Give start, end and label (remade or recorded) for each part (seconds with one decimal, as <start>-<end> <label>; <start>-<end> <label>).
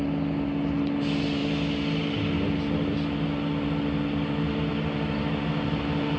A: 0.0-6.2 recorded